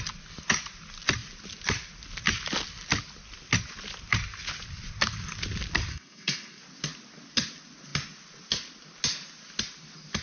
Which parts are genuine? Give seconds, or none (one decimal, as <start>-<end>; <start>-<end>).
0.0-5.9; 6.6-10.2